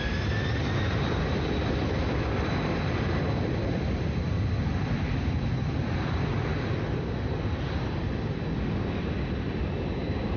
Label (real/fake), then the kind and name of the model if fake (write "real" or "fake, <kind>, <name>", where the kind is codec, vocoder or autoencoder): real